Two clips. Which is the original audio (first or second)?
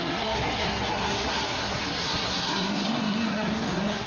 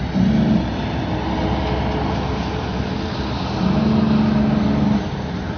second